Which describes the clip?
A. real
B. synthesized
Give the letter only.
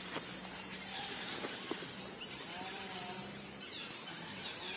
A